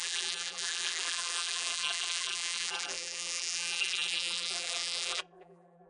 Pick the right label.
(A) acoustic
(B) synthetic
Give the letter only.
B